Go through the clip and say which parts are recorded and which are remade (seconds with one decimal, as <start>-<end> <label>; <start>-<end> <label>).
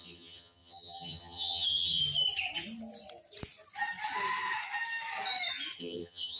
0.0-2.0 remade; 2.0-5.8 recorded; 5.8-6.4 remade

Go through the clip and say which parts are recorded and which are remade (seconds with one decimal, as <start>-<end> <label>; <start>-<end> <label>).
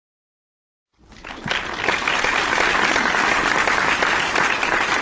0.0-5.0 recorded